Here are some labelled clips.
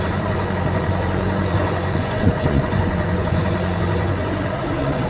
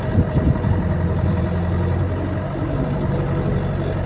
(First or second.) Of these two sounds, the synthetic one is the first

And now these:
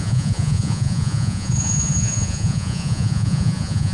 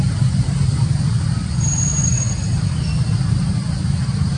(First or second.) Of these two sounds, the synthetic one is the first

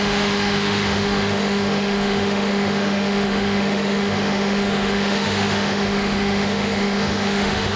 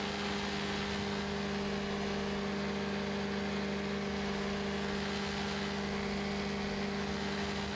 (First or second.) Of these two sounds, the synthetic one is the first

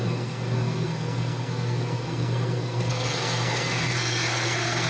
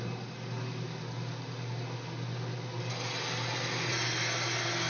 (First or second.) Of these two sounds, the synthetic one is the first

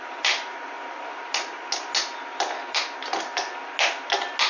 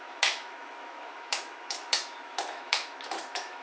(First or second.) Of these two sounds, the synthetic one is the second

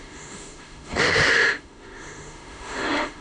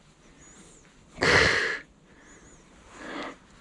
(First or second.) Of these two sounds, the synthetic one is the first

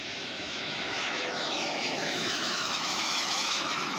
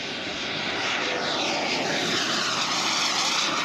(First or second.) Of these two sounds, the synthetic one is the first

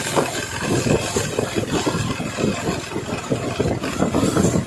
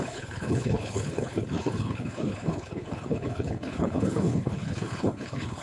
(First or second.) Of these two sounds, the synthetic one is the second